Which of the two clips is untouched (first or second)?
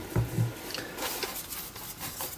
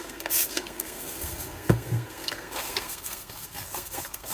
first